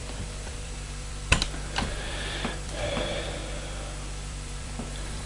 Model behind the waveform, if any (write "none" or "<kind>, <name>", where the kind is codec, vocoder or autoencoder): vocoder, BigVGAN v2